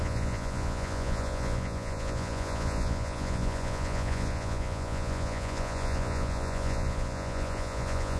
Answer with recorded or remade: remade